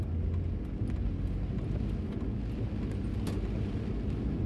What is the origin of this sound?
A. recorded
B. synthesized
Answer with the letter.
A